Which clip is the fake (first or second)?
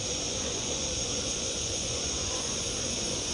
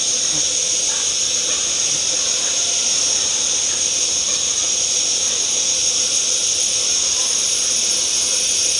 first